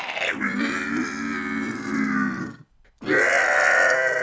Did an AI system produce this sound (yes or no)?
no